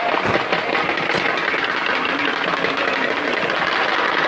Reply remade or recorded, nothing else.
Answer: recorded